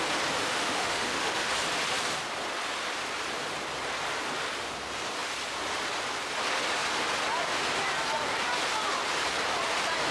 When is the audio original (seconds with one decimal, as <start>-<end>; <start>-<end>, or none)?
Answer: 0.0-0.4; 1.5-10.1